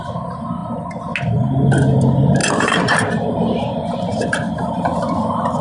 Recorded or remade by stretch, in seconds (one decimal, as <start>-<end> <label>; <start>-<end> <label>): 0.0-2.4 recorded; 2.4-5.6 remade